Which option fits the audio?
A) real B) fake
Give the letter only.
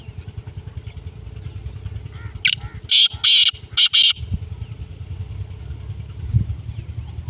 A